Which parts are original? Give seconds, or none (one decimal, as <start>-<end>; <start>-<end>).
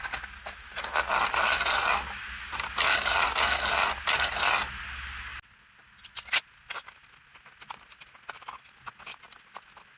0.0-10.0